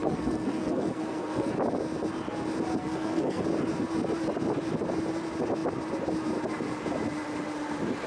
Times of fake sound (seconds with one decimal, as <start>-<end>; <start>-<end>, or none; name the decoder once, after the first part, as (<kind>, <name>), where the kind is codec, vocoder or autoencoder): 0.0-1.5 (codec, SNAC); 2.8-3.4